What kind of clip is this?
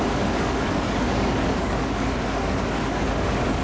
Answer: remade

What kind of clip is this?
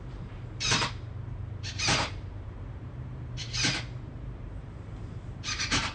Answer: remade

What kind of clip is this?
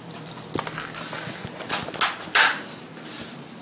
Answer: recorded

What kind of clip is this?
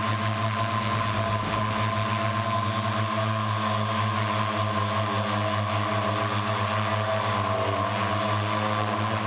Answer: recorded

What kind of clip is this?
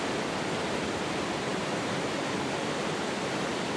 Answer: recorded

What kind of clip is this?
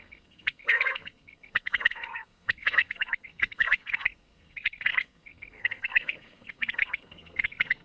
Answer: remade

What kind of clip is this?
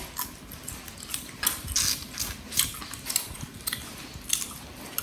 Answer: recorded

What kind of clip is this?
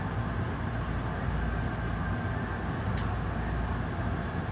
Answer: recorded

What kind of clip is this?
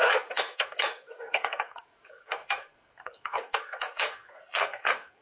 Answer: remade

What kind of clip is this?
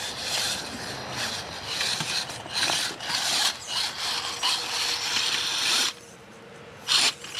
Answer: recorded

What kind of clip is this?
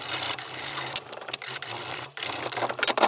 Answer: recorded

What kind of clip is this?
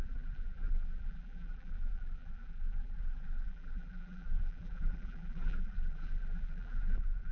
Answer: remade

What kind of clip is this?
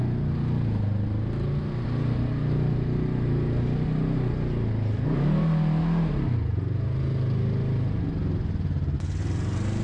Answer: recorded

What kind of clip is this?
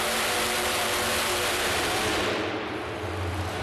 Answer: recorded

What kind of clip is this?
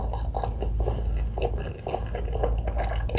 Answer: recorded